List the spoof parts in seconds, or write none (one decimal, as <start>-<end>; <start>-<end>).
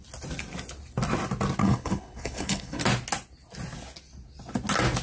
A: 1.6-2.8